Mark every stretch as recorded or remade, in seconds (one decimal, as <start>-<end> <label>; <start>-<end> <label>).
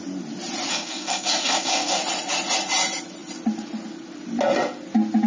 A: 0.0-0.7 recorded; 0.7-2.0 remade; 2.0-5.3 recorded